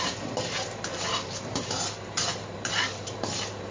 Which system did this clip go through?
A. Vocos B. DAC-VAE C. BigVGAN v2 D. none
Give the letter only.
C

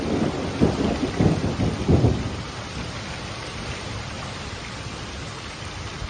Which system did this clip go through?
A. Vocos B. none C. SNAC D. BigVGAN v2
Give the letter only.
B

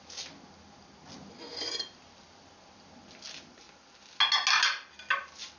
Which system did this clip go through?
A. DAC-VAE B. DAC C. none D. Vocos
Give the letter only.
C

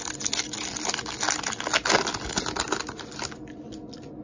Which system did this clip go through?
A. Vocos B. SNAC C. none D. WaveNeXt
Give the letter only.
C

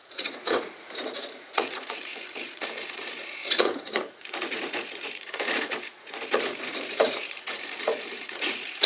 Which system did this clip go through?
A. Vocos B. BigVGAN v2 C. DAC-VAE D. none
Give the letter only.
A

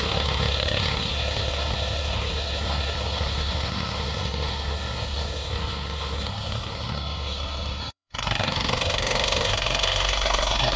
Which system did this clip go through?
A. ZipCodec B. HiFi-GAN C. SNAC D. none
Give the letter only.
C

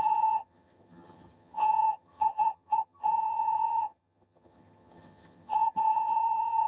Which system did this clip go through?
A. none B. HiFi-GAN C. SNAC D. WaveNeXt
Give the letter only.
B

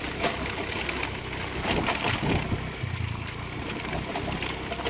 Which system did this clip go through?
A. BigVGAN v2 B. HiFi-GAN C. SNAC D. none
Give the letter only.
D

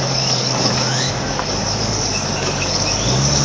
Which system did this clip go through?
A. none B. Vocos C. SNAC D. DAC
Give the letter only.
D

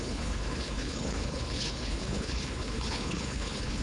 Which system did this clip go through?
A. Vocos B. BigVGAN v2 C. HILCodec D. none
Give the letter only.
C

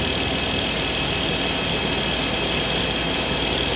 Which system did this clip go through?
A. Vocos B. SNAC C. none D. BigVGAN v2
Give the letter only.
C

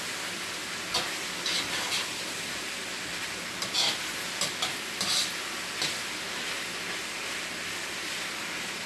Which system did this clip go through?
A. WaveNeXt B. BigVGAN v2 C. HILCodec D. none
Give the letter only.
D